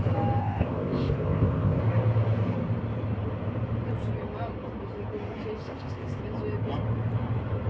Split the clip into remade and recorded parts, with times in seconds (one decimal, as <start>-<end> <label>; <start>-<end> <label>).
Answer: 0.0-0.4 recorded; 0.4-1.8 remade; 1.8-5.6 recorded; 5.6-6.2 remade; 6.2-7.7 recorded